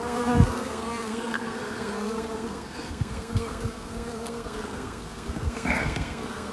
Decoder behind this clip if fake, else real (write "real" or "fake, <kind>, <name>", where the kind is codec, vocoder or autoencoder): fake, codec, SNAC